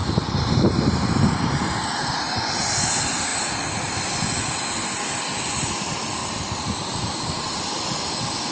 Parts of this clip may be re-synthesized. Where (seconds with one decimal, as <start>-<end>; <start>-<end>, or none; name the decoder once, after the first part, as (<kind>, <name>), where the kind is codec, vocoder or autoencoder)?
0.0-2.2 (vocoder, BigVGAN v2); 6.2-7.3